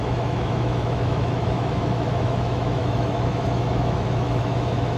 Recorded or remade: remade